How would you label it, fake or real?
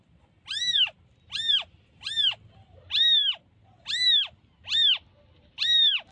real